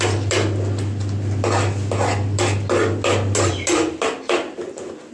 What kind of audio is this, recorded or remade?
recorded